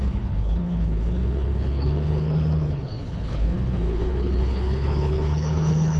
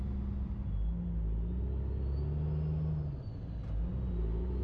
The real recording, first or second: second